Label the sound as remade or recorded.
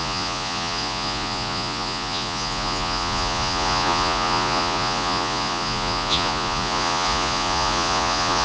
remade